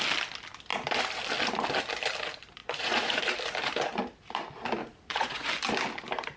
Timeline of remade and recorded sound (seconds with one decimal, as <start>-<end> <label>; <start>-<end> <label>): 0.0-2.6 recorded; 2.6-3.2 remade; 3.2-4.8 recorded; 4.8-5.5 remade; 5.5-6.4 recorded

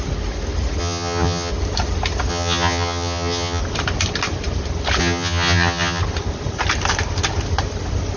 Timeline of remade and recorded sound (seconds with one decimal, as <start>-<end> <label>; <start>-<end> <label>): 0.0-0.8 recorded; 0.8-1.5 remade; 1.5-2.3 recorded; 2.3-3.6 remade; 3.6-5.0 recorded; 5.0-6.0 remade; 6.0-8.2 recorded

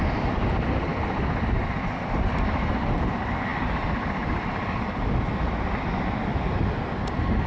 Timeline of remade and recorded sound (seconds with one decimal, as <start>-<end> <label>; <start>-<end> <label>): 0.0-7.5 recorded

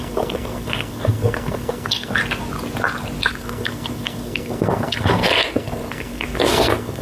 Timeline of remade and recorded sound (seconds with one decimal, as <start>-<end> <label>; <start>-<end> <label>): 0.0-2.2 remade; 2.2-3.3 recorded; 3.3-7.0 remade

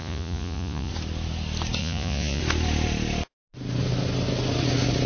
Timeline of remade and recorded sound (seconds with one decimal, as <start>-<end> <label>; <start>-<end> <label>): 0.0-0.9 remade; 0.9-1.8 recorded; 1.8-2.4 remade; 2.4-5.1 recorded

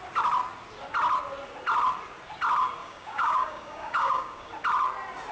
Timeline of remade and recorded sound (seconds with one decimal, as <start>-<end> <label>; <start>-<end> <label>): 0.0-2.8 recorded; 2.8-4.5 remade; 4.5-5.3 recorded